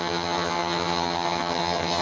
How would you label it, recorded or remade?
remade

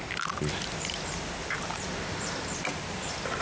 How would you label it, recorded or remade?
recorded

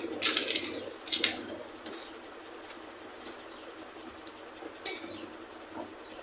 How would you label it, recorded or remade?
recorded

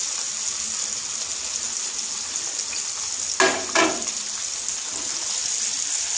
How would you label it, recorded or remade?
recorded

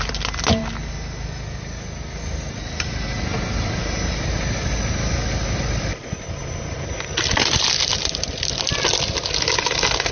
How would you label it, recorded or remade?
recorded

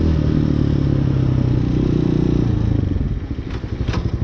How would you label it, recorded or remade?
recorded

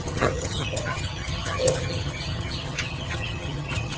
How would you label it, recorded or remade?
remade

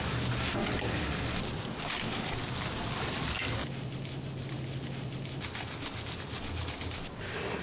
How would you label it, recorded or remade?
recorded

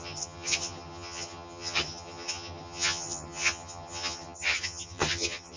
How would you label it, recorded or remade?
remade